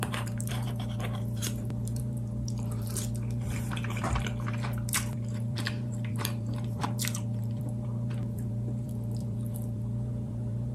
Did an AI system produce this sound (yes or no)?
yes